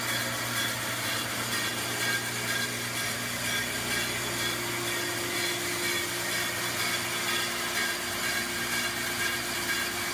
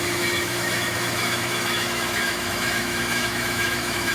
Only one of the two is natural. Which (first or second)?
first